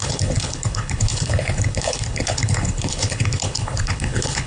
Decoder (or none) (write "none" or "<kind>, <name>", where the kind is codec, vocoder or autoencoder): codec, HILCodec